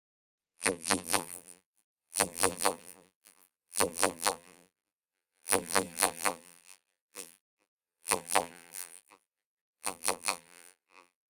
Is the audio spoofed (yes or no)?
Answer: yes